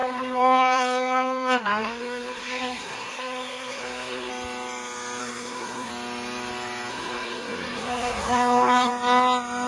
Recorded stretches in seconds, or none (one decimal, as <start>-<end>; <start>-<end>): 4.3-5.2; 5.9-6.9; 8.9-9.7